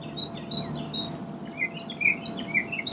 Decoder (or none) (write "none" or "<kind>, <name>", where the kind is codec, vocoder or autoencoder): none